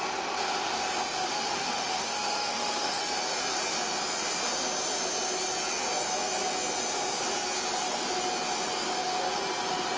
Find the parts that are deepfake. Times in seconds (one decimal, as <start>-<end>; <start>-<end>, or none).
1.2-3.0